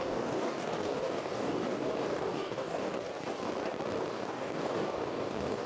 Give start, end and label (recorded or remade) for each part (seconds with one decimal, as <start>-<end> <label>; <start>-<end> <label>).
0.0-3.1 remade; 3.1-4.1 recorded; 4.1-5.7 remade